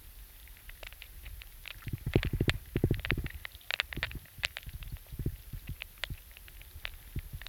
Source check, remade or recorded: recorded